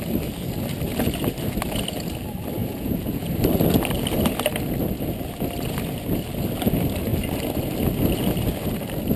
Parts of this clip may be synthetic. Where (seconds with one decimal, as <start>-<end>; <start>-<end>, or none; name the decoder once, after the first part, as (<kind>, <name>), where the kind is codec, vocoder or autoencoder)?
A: 2.6-3.2 (vocoder, Vocos)